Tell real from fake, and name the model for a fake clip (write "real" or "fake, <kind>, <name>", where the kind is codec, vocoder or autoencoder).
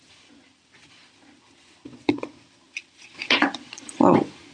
fake, vocoder, Vocos